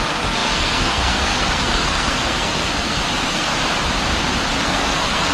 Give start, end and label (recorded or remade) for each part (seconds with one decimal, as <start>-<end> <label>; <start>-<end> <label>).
0.0-3.5 remade; 3.5-4.6 recorded; 4.6-5.3 remade